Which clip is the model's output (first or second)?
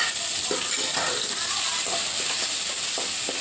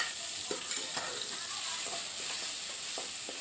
second